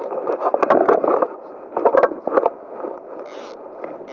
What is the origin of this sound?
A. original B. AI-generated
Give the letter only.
A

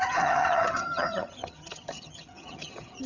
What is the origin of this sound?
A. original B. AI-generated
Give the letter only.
B